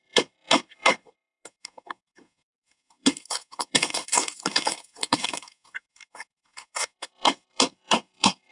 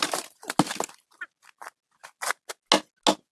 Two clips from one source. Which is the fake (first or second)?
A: first